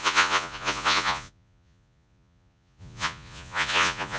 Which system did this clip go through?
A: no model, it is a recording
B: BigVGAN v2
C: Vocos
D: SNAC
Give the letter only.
C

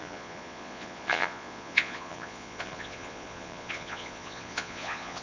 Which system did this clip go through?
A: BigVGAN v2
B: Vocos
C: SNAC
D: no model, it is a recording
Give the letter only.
B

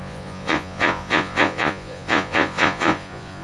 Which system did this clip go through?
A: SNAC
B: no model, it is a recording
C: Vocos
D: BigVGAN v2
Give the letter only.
C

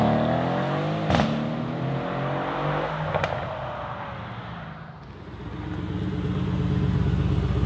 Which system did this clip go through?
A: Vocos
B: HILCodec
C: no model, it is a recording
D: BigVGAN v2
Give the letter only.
C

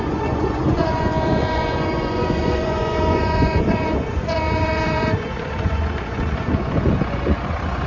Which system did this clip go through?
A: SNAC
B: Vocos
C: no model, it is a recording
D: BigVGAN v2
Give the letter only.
B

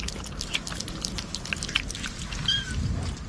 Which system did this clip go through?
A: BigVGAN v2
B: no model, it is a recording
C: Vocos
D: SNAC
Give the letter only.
B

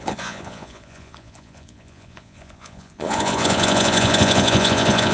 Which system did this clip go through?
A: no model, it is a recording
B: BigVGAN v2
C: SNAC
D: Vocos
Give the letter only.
D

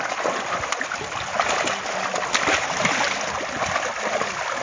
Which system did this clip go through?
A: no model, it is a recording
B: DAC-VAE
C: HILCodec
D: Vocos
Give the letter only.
A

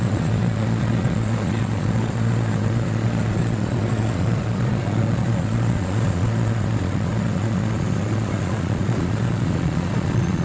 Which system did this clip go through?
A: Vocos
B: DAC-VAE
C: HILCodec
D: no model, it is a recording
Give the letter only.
A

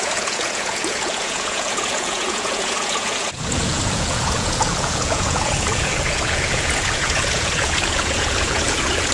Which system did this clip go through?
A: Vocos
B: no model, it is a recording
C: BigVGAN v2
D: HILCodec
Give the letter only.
A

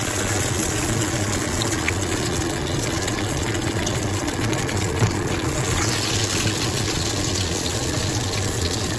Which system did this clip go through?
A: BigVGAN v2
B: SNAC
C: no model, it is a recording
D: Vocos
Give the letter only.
D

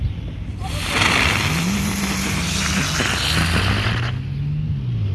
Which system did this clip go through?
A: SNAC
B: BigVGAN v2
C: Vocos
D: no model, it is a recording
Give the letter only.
D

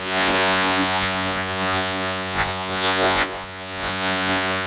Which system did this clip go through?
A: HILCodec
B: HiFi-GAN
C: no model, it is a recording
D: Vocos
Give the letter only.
D